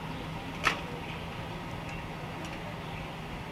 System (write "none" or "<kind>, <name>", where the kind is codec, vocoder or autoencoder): none